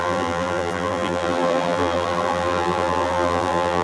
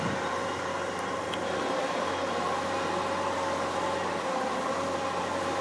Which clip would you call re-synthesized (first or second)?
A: first